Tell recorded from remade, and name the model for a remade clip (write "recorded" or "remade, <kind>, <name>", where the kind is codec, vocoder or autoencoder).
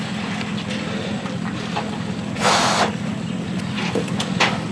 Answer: recorded